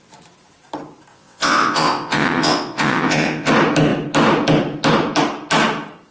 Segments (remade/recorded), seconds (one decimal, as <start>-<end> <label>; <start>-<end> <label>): 0.0-1.1 recorded; 1.1-3.5 remade; 3.5-6.1 recorded